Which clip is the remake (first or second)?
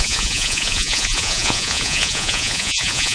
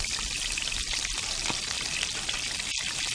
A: first